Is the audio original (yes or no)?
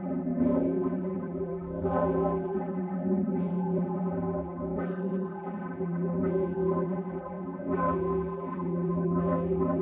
no